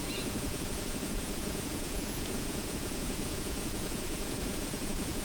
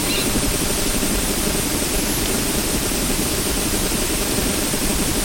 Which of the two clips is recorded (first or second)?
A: second